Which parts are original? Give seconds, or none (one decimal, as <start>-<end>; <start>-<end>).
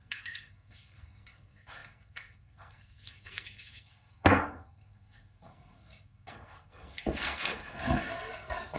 none